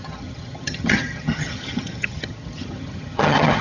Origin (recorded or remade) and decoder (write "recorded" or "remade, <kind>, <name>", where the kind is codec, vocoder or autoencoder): remade, vocoder, HiFi-GAN